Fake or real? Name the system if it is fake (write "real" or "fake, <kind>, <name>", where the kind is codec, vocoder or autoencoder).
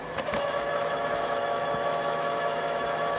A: fake, autoencoder, DAC-VAE